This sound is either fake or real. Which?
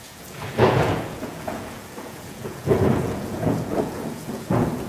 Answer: fake